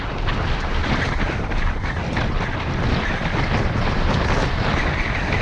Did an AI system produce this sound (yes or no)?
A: no